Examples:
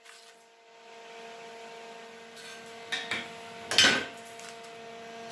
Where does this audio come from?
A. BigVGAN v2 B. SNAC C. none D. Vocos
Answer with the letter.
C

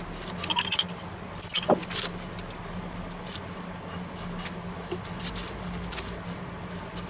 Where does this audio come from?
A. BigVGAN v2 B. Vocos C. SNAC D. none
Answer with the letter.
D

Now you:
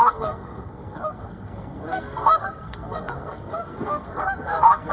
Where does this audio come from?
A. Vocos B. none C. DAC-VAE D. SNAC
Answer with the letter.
D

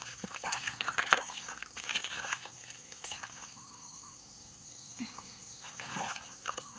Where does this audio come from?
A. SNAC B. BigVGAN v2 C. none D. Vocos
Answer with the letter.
A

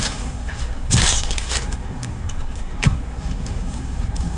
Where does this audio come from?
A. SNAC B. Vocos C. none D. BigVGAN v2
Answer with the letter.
A